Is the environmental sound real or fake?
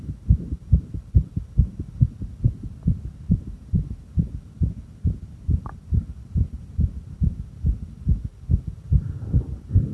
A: real